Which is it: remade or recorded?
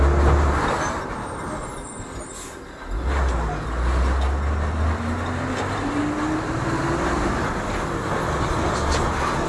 recorded